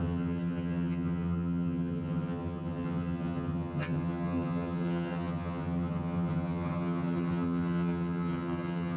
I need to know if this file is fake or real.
fake